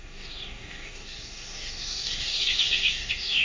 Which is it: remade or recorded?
remade